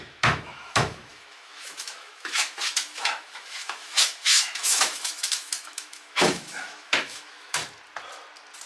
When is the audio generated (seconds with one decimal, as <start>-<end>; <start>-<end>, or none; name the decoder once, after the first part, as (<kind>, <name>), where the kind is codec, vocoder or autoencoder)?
0.0-7.6 (autoencoder, DAC-VAE)